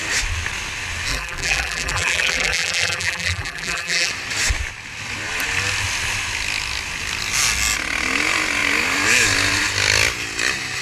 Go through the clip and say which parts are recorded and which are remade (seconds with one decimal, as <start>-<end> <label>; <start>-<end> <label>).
0.0-1.1 recorded; 1.1-4.1 remade; 4.1-10.8 recorded